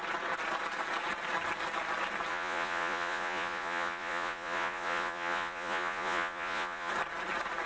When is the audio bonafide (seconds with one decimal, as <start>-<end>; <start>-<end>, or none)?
0.0-2.3; 6.9-7.7